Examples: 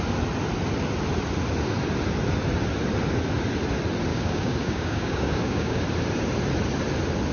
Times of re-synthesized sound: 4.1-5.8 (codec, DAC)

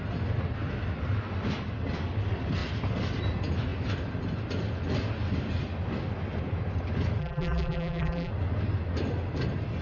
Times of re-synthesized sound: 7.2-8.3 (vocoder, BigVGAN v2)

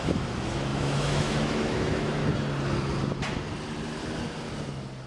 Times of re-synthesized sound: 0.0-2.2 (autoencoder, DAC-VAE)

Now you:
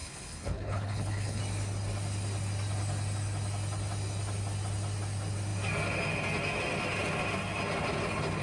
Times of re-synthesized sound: 0.0-1.4 (codec, HILCodec)